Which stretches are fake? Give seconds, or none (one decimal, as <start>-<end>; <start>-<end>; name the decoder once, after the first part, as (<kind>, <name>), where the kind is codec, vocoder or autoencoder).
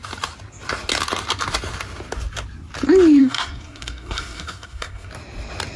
3.2-5.1 (codec, SNAC)